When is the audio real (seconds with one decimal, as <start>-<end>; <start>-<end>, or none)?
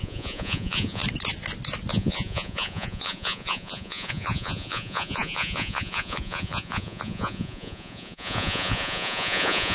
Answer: 1.0-1.9